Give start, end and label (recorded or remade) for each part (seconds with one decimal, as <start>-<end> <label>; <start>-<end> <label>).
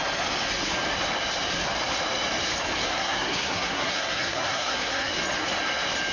0.0-2.8 recorded; 2.8-5.1 remade; 5.1-6.1 recorded